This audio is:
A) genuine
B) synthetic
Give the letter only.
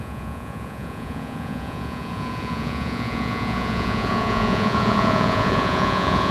B